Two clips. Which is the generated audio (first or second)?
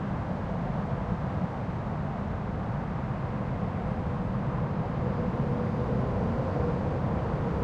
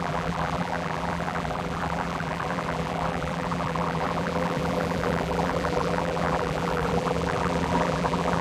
second